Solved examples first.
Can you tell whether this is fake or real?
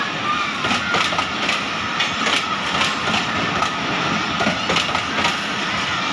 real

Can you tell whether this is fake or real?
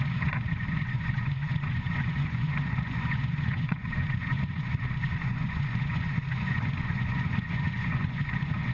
fake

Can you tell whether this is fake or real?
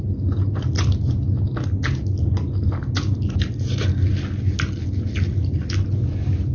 real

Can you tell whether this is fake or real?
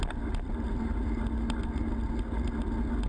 real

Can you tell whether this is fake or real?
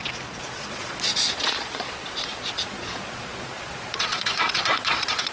fake